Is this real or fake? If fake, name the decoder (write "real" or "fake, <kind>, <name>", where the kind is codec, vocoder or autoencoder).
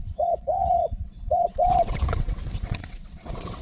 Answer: fake, vocoder, WaveNeXt